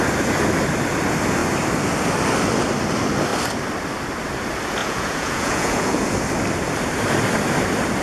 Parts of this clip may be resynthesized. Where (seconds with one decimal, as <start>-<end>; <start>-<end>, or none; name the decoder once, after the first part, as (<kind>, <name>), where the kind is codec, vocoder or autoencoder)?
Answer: 4.8-6.1 (vocoder, Vocos)